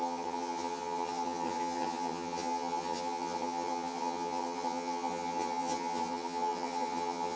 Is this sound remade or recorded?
remade